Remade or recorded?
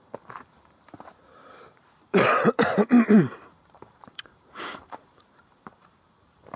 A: remade